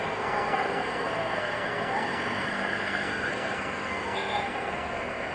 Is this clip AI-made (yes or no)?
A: yes